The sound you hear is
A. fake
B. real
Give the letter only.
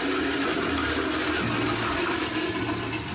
B